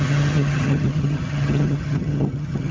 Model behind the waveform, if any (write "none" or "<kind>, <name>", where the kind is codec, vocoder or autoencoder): vocoder, HiFi-GAN